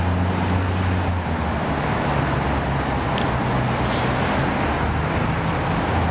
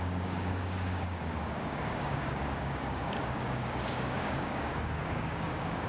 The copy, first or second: second